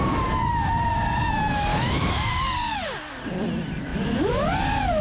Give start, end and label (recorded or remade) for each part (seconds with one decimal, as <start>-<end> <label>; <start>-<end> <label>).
0.0-1.7 recorded; 1.7-2.3 remade; 2.3-5.0 recorded